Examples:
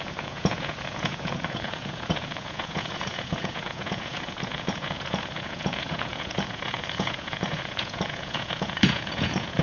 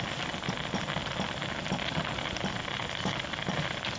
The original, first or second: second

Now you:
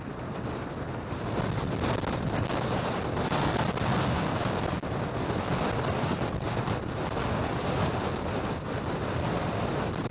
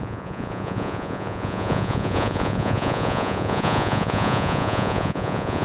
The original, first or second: first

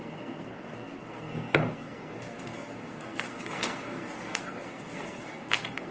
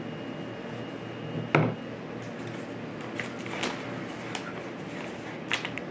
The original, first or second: second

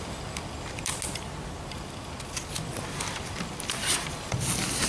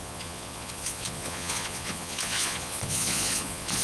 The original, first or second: first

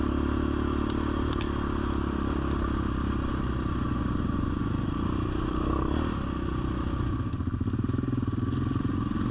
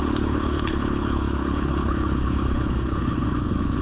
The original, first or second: first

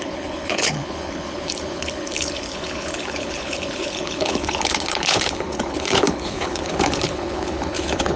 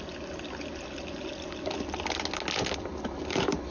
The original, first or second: second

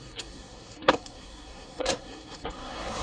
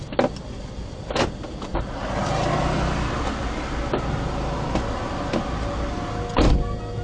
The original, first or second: second